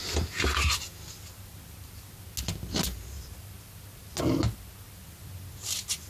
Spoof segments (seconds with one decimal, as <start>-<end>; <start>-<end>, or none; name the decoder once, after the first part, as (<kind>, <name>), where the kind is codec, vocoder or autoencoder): none